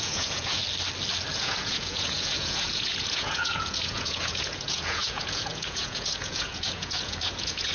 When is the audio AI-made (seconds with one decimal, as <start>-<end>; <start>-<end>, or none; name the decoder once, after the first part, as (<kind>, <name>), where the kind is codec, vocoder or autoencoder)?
0.0-0.6 (vocoder, Vocos); 1.3-7.7